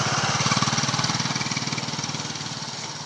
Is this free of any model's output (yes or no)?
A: yes